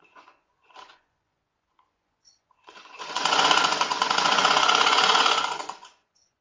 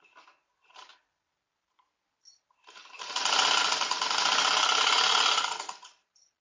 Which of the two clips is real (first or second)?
second